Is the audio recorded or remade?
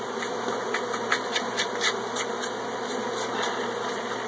recorded